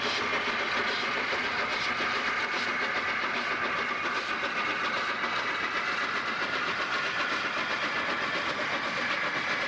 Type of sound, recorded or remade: recorded